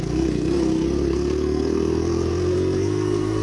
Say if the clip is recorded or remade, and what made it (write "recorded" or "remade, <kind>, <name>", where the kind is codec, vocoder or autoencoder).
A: remade, codec, SNAC